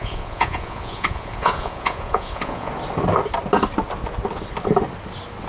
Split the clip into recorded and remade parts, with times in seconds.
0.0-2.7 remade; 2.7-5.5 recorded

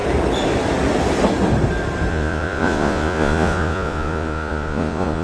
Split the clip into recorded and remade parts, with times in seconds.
0.0-2.1 recorded; 2.1-5.2 remade

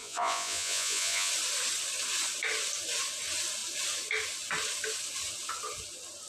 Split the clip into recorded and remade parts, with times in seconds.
0.0-1.3 remade; 1.3-6.3 recorded

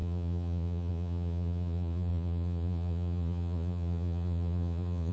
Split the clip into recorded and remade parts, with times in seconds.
0.0-5.1 remade